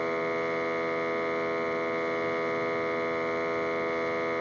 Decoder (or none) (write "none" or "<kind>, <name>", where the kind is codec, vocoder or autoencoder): none